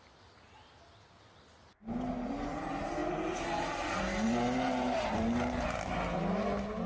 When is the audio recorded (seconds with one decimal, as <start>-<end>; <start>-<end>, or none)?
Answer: 0.0-6.9